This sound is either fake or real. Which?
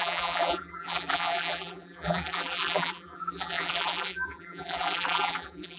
fake